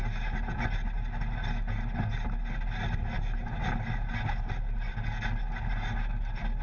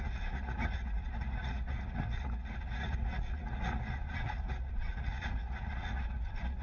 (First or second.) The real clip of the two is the first